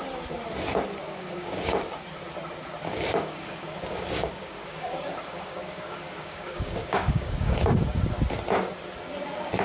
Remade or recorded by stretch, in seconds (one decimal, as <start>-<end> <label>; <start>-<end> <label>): 0.0-1.0 recorded; 1.0-1.9 remade; 1.9-2.8 recorded; 2.8-8.0 remade; 8.0-9.6 recorded